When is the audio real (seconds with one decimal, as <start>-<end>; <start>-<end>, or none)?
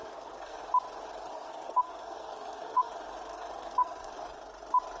0.6-1.3; 2.9-3.3; 4.1-5.0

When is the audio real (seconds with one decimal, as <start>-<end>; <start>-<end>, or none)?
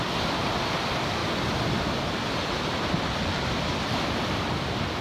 0.0-5.0